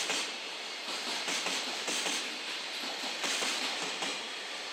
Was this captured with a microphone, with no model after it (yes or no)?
no